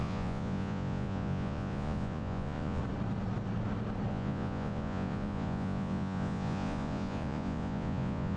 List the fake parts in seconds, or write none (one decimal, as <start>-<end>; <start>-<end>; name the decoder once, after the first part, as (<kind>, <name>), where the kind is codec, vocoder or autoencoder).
0.0-2.8 (vocoder, Vocos); 4.1-8.4